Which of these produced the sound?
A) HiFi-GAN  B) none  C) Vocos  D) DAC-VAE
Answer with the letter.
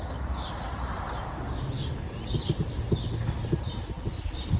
B